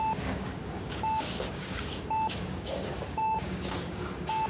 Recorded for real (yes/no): no